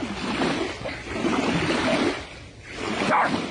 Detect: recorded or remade recorded